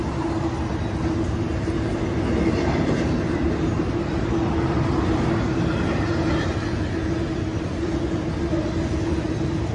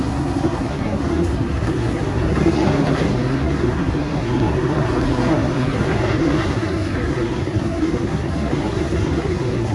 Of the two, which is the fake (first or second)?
second